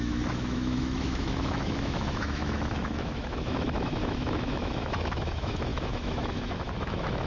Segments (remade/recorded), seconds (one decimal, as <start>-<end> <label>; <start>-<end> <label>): 0.0-7.3 remade